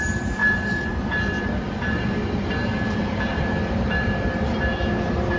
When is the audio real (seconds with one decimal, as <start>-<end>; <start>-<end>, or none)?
0.0-5.4